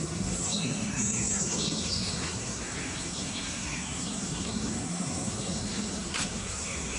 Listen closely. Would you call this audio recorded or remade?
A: remade